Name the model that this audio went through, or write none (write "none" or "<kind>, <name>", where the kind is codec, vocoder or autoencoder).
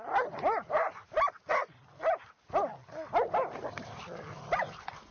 vocoder, BigVGAN v2